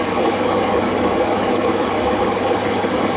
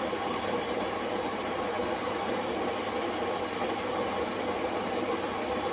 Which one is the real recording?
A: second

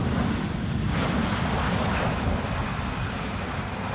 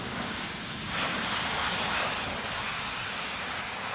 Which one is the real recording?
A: first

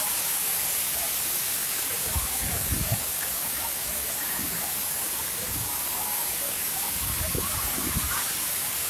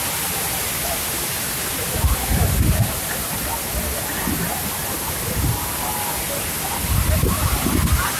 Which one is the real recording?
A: second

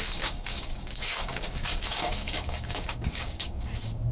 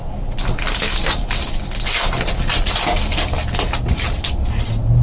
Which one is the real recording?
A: second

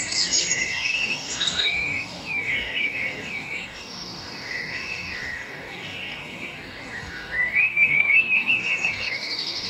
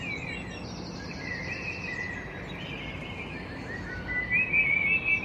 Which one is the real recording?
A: second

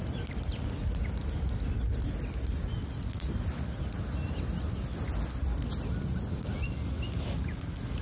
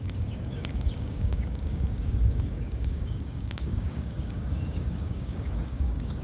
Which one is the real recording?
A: first